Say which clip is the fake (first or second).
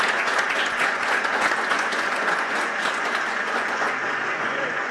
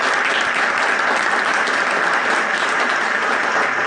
first